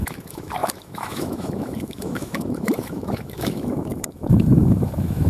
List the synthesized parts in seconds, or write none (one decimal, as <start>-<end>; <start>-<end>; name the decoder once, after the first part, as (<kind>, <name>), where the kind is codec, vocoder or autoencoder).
0.0-5.3 (autoencoder, DAC-VAE)